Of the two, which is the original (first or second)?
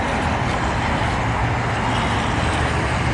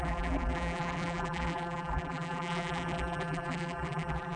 first